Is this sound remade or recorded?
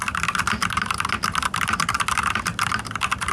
recorded